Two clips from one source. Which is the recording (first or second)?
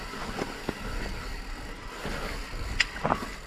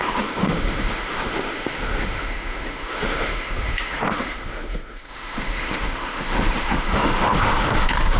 first